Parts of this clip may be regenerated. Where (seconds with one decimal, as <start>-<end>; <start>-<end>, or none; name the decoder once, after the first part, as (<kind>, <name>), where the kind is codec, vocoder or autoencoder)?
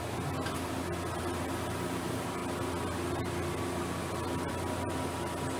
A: none